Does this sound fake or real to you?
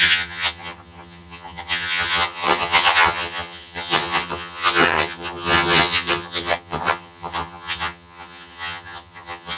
fake